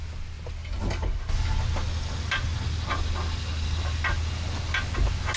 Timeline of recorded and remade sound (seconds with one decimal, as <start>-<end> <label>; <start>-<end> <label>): 0.0-5.4 recorded